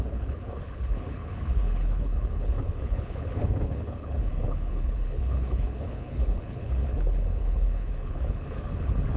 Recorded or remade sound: remade